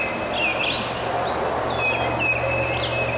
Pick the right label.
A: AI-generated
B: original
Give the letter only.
B